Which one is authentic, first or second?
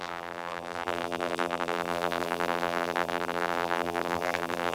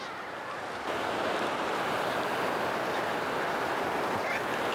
second